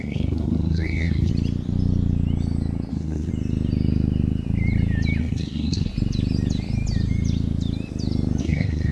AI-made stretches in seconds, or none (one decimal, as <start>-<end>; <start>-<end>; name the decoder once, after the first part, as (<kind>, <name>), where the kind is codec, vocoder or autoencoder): 0.0-1.3 (codec, SNAC); 2.9-3.3; 5.2-5.9; 8.4-8.9

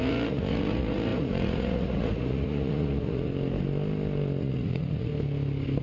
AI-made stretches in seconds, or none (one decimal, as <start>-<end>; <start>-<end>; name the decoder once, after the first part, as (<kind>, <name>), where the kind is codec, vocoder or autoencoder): 0.0-3.3 (vocoder, Vocos); 4.4-5.1

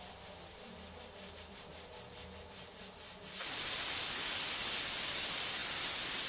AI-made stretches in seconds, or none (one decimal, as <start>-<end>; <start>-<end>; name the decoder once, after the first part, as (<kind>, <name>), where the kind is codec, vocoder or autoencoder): none

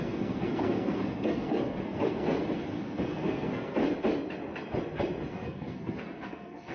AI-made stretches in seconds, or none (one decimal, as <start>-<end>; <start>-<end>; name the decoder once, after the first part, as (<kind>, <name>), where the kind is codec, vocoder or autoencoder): 0.0-3.8 (codec, SNAC); 5.3-6.7

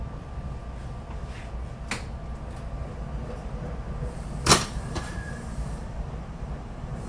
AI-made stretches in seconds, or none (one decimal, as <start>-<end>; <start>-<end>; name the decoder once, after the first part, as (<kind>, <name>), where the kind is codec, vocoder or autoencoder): 4.5-7.1 (vocoder, BigVGAN v2)